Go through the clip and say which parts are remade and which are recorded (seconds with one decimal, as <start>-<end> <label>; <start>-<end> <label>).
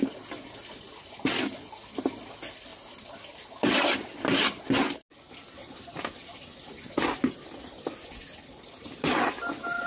0.0-9.9 recorded